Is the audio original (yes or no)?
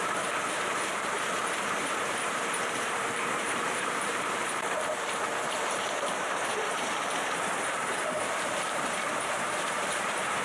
no